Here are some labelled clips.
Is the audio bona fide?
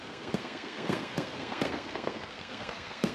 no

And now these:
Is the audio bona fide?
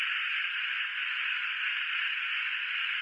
yes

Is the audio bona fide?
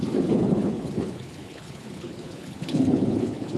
no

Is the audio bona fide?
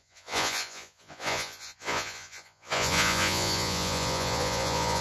no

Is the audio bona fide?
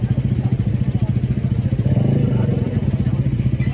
yes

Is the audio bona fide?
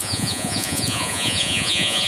no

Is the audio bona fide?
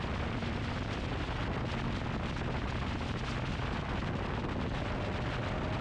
yes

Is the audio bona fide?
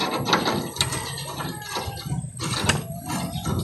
yes